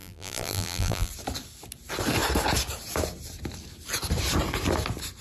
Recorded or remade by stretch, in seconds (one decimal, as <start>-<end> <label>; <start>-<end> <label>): 0.0-1.1 remade; 1.1-5.2 recorded